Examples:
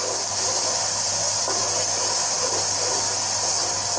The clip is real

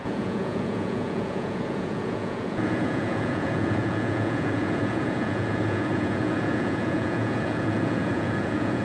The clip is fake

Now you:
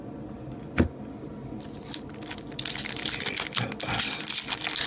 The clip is real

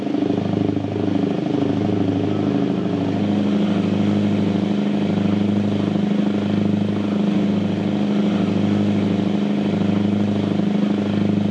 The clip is real